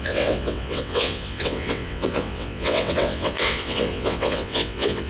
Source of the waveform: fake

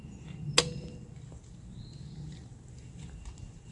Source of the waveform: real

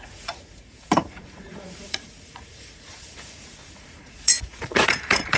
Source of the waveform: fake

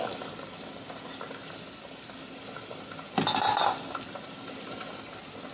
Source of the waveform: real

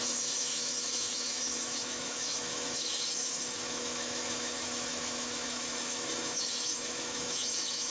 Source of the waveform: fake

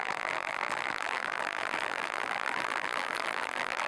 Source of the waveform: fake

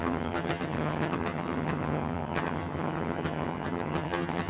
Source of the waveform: fake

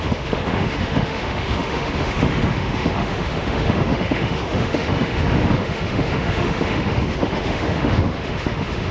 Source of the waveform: fake